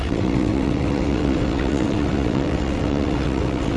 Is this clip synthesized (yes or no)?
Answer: yes